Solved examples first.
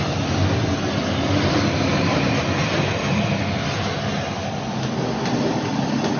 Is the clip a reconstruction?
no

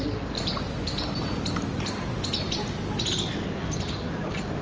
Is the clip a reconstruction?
no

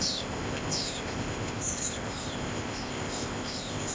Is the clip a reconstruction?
yes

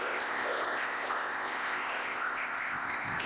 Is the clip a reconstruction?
yes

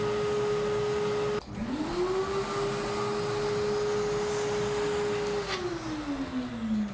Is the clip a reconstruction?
no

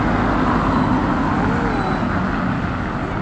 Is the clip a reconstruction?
no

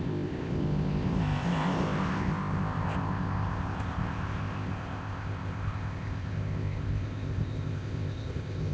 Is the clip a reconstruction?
yes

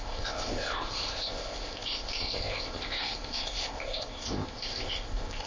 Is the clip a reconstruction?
yes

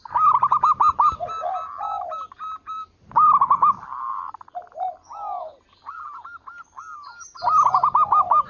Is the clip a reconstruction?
no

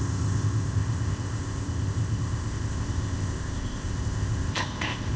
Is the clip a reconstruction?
yes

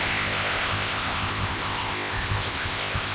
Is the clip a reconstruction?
yes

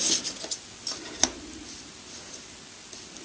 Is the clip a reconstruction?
no